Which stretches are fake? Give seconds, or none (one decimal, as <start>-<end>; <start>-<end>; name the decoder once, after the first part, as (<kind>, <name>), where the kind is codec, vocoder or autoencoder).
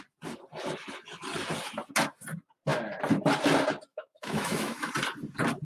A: 3.9-4.9 (autoencoder, DAC-VAE)